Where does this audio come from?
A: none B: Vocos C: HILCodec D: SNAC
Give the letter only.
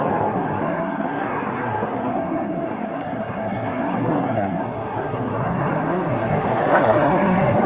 D